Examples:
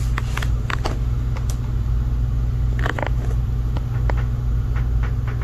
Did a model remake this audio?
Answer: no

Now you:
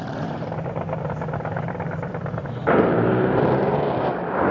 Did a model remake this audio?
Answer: yes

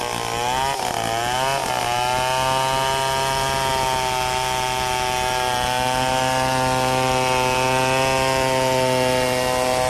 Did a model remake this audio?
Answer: no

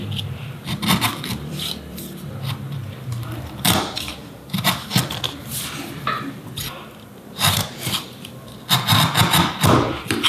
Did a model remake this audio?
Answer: yes